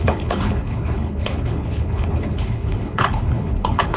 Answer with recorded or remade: remade